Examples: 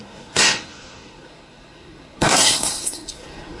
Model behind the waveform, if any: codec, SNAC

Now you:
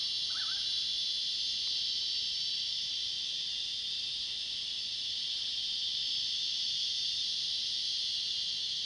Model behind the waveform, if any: vocoder, BigVGAN v2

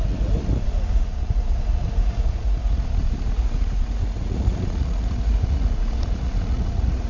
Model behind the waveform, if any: vocoder, Vocos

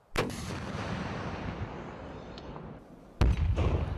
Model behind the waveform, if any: none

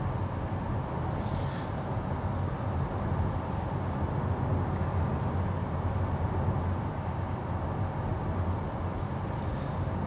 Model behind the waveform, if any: none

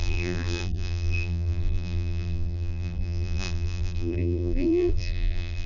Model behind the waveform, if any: vocoder, BigVGAN v2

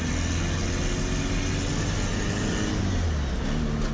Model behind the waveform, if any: none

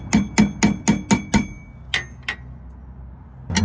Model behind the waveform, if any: none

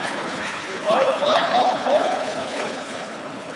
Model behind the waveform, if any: codec, HILCodec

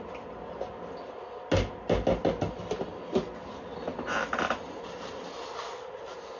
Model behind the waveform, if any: none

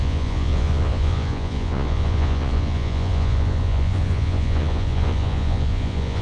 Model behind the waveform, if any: vocoder, Vocos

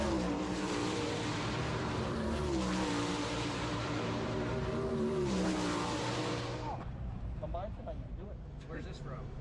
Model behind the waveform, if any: vocoder, BigVGAN v2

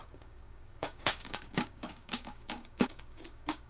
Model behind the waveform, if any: codec, DAC